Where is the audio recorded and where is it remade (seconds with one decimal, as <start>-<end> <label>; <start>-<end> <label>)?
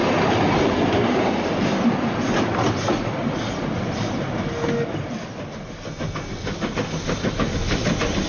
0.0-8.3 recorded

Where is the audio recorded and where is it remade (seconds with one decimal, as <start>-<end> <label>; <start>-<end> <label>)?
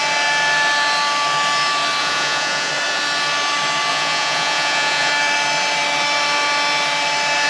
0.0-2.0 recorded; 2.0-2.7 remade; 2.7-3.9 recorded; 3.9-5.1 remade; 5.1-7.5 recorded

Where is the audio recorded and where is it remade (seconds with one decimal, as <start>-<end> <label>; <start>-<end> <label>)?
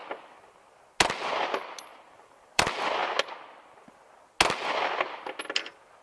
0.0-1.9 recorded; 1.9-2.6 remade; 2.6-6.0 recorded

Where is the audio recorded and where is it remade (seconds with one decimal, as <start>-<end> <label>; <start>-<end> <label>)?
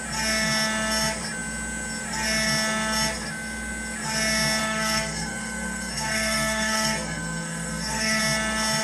0.0-4.6 recorded; 4.6-8.2 remade; 8.2-8.8 recorded